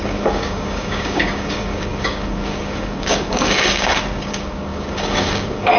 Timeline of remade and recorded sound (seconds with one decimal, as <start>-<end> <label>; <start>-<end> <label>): 0.0-5.8 remade